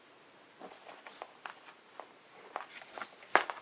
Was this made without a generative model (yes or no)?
yes